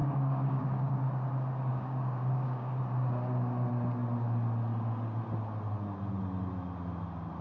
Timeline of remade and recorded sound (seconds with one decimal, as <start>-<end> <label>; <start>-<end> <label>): 0.0-0.9 remade; 0.9-1.7 recorded; 1.7-2.8 remade; 2.8-7.4 recorded